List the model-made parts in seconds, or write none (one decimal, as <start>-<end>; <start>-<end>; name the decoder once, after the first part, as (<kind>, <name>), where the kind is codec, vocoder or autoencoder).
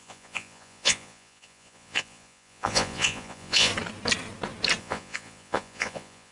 0.0-3.7 (vocoder, Vocos); 4.8-6.3